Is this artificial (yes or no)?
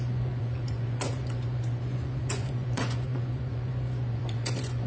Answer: yes